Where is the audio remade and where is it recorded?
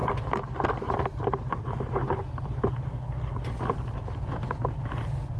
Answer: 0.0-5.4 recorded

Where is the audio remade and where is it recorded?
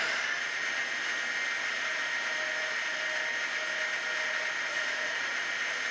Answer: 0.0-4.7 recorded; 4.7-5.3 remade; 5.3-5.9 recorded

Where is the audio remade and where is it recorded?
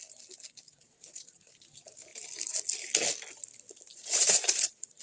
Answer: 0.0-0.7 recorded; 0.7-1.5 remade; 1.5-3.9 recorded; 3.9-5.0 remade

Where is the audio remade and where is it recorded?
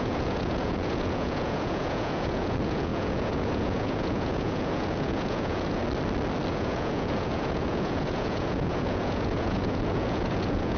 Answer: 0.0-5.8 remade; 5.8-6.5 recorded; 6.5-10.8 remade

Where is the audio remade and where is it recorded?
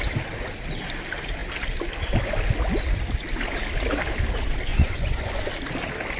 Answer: 0.0-4.7 recorded; 4.7-5.5 remade; 5.5-6.2 recorded